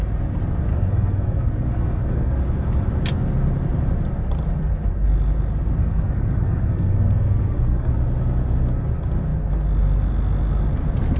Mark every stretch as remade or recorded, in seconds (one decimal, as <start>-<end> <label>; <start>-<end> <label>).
0.0-0.7 recorded; 0.7-2.4 remade; 2.4-5.8 recorded; 5.8-7.9 remade; 7.9-11.2 recorded